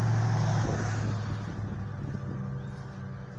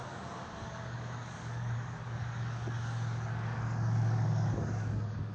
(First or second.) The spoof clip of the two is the second